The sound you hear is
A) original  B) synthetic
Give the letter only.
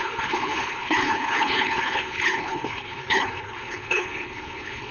B